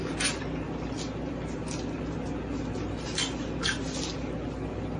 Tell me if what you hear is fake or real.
real